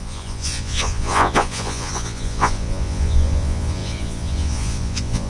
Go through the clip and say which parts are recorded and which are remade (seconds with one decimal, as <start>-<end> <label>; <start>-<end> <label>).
0.0-5.3 remade